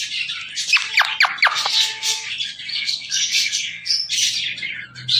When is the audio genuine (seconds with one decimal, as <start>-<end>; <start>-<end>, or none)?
0.0-1.5; 2.3-2.7; 4.1-5.2